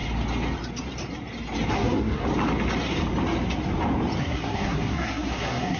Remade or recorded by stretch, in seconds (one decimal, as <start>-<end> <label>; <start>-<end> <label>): 0.0-1.7 recorded; 1.7-2.3 remade; 2.3-4.2 recorded; 4.2-5.8 remade